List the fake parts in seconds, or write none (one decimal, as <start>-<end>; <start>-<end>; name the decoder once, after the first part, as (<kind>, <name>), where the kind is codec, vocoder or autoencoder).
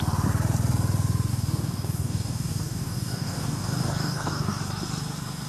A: 1.3-4.6 (codec, DAC)